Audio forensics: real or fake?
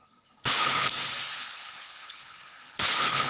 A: fake